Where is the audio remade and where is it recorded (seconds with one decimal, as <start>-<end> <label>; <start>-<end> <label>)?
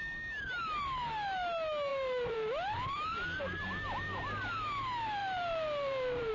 0.0-1.9 recorded; 1.9-3.4 remade; 3.4-5.2 recorded; 5.2-6.3 remade